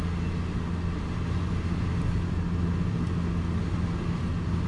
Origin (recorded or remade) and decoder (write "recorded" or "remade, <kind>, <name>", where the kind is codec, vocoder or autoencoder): recorded